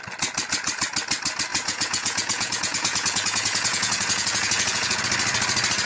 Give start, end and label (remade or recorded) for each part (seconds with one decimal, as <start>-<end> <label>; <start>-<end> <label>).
0.0-1.5 recorded; 1.5-5.0 remade; 5.0-5.9 recorded

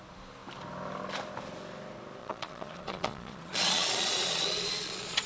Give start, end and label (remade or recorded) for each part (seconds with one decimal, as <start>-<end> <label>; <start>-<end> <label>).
0.0-2.2 recorded; 2.2-5.3 remade

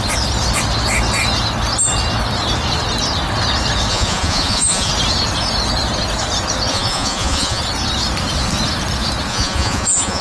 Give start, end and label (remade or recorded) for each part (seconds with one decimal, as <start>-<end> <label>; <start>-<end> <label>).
0.0-3.9 recorded; 3.9-4.9 remade; 4.9-6.7 recorded; 6.7-7.6 remade; 7.6-9.3 recorded; 9.3-10.2 remade

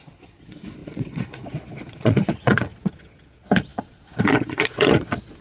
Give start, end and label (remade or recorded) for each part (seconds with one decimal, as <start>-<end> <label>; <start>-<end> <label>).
0.0-5.4 remade

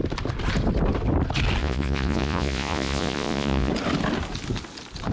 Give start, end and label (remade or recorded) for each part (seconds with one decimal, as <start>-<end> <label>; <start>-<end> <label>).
0.0-1.6 recorded; 1.6-3.7 remade; 3.7-5.1 recorded

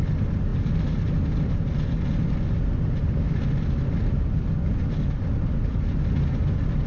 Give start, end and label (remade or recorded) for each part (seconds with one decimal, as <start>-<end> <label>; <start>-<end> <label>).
0.0-6.9 recorded

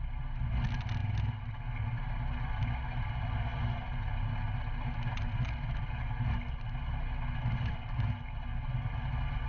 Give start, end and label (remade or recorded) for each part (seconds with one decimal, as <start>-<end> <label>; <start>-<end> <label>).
0.0-9.5 recorded